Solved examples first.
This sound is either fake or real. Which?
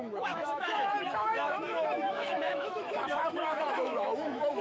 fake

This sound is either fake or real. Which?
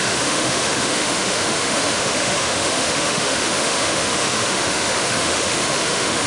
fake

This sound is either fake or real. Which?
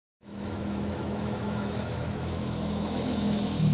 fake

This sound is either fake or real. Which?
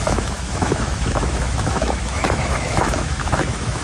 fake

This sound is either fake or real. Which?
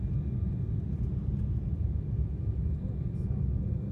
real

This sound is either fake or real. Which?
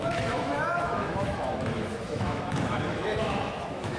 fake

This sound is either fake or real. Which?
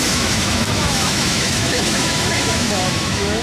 fake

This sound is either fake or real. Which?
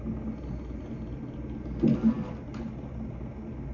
real